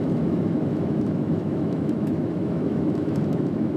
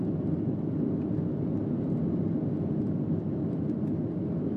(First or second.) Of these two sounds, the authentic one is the second